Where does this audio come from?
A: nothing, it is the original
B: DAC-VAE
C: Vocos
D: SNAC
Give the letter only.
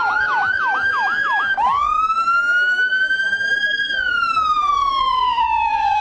B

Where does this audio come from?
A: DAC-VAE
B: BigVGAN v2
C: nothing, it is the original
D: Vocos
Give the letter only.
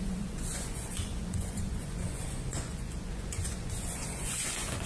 D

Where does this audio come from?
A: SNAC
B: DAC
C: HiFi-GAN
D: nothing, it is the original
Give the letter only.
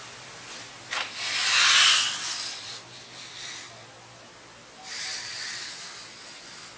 D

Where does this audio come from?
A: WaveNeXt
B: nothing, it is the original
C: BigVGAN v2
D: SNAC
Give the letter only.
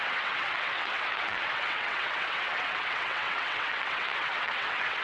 A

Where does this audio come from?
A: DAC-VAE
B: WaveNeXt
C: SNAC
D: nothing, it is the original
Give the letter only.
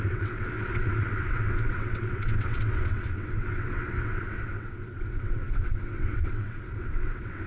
B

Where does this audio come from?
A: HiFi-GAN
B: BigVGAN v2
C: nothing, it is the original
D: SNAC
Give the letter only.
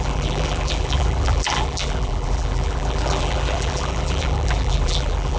B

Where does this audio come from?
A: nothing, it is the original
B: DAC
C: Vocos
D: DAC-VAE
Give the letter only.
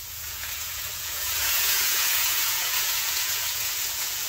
C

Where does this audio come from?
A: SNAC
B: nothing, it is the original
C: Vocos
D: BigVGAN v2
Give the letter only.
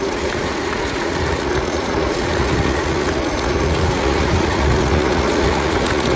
C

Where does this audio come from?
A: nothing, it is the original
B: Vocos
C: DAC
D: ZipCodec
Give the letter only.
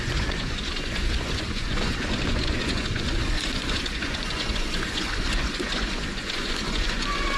B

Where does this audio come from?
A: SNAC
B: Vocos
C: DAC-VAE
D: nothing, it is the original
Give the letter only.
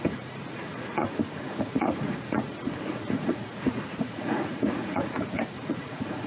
B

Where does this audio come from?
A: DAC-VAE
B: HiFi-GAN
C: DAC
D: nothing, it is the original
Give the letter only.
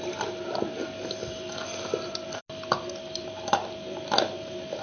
D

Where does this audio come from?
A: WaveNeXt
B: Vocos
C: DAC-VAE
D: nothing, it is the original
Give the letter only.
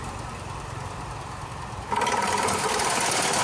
D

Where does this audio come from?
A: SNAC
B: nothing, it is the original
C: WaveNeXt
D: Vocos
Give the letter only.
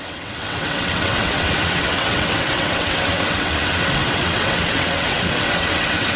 C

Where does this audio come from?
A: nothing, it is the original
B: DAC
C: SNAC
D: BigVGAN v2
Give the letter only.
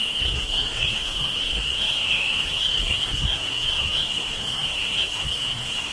C